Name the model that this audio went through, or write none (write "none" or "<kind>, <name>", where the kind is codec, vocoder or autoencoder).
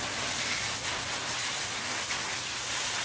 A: none